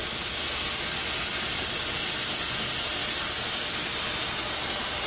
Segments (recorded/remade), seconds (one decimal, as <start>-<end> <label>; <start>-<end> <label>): 0.0-5.1 recorded